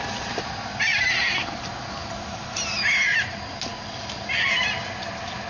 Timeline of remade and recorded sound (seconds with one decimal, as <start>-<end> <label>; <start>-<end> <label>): 0.0-5.5 recorded